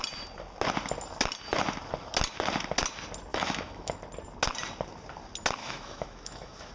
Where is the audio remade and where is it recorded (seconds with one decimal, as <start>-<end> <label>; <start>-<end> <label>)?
0.0-3.3 recorded; 3.3-4.0 remade; 4.0-5.6 recorded; 5.6-6.7 remade